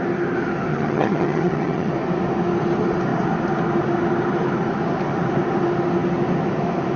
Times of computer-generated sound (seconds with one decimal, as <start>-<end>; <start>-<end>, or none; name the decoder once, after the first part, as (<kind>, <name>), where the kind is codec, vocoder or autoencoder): 0.7-1.9 (vocoder, HiFi-GAN)